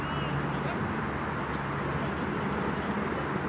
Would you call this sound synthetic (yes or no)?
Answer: no